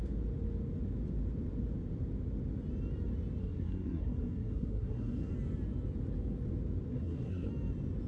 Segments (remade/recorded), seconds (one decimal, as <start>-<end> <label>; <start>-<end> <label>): 0.0-3.4 recorded; 3.4-5.3 remade; 5.3-6.9 recorded; 6.9-7.5 remade; 7.5-8.1 recorded